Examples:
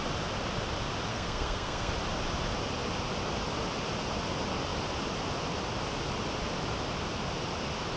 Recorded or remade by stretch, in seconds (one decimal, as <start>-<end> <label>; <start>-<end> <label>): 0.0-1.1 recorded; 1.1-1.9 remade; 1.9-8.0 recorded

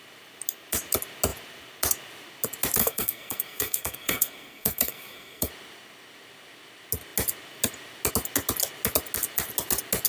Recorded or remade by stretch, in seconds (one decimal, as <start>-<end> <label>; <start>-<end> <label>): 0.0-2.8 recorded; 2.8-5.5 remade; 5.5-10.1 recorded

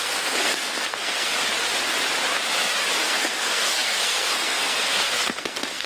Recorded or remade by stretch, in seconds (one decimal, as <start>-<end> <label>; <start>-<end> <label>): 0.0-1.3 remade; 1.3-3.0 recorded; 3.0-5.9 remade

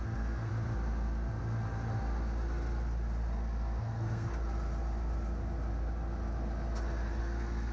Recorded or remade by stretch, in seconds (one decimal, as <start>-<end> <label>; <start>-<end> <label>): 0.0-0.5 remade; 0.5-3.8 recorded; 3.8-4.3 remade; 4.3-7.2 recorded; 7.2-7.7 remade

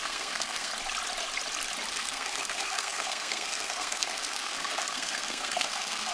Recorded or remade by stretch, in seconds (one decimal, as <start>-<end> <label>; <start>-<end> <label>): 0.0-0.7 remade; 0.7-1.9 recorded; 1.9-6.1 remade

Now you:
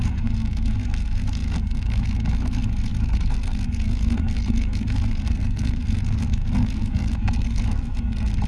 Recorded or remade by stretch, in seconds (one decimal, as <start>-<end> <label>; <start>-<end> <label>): 0.0-8.5 remade

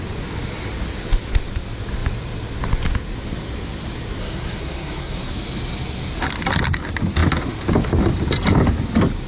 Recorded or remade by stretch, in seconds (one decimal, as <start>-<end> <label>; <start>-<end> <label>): 0.0-4.2 recorded; 4.2-5.3 remade; 5.3-9.3 recorded